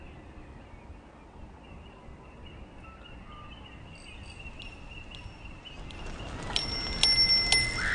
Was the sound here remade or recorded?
recorded